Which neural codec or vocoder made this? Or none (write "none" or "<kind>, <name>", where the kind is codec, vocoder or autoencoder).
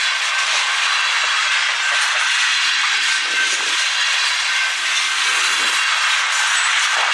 none